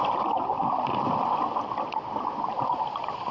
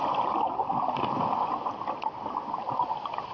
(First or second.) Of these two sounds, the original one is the second